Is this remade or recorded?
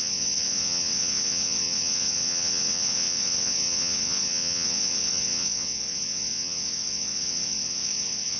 remade